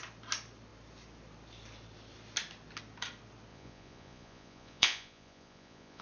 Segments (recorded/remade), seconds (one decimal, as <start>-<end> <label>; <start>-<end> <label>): 0.0-3.5 recorded; 3.5-6.0 remade